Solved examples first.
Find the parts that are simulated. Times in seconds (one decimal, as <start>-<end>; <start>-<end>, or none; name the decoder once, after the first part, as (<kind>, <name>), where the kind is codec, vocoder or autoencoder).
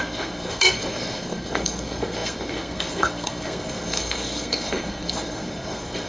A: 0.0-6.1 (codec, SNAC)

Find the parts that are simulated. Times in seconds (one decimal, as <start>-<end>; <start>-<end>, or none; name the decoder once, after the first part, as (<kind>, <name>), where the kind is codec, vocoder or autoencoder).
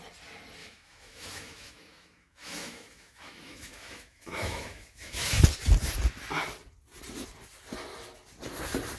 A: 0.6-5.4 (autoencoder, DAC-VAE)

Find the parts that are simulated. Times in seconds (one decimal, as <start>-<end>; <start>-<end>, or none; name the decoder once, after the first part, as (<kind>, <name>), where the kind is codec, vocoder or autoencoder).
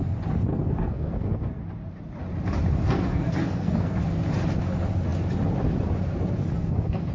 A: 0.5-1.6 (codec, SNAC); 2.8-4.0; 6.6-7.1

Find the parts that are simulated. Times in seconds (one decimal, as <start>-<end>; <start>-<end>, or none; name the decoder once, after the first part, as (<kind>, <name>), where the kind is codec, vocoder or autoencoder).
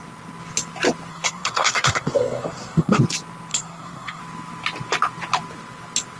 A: 1.1-3.0 (codec, SNAC); 3.5-4.2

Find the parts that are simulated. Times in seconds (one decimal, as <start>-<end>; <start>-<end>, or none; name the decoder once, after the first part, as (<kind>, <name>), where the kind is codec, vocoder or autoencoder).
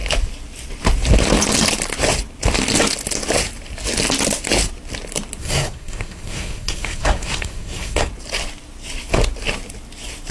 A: 5.4-8.1 (codec, SNAC)